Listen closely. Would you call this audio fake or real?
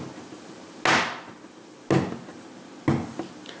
real